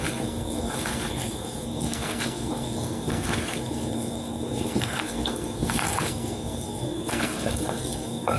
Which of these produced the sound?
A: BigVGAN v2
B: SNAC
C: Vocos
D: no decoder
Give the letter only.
B